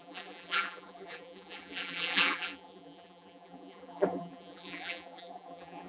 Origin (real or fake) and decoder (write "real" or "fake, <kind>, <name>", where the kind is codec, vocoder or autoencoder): fake, vocoder, BigVGAN v2